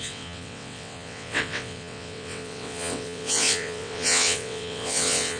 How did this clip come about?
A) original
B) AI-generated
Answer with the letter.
B